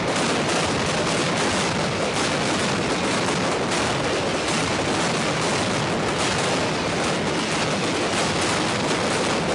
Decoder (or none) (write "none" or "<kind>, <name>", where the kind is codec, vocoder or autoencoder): none